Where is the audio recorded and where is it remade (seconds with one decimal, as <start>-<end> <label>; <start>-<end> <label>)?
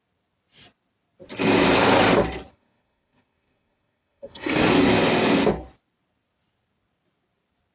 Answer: 0.0-2.5 recorded; 2.5-4.7 remade; 4.7-7.7 recorded